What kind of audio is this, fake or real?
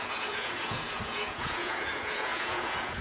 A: fake